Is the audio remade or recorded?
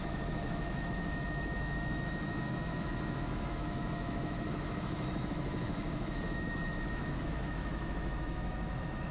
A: remade